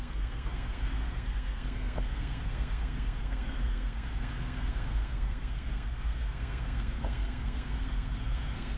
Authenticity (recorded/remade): remade